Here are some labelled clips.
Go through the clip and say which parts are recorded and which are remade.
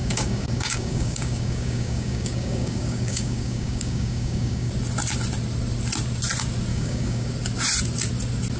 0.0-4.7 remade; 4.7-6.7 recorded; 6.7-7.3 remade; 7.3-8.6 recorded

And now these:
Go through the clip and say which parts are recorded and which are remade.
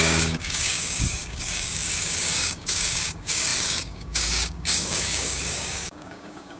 0.0-6.6 remade